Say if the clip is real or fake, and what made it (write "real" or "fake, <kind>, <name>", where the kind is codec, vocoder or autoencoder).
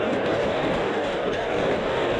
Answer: fake, codec, DAC